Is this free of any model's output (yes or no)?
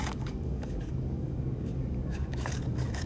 no